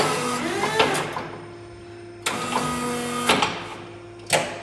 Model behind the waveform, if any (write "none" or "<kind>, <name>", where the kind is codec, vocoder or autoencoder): none